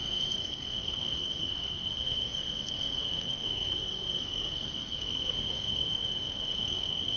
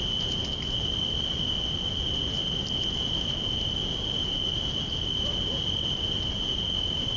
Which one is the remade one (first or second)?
first